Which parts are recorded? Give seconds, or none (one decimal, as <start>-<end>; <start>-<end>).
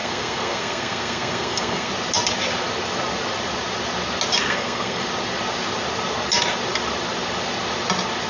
1.9-4.4; 5.0-8.3